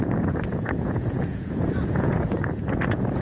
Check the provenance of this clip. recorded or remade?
remade